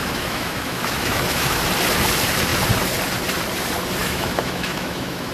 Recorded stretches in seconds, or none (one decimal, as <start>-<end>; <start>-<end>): 1.6-4.0